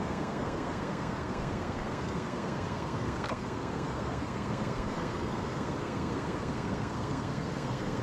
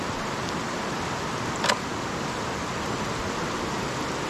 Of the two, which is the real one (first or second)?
second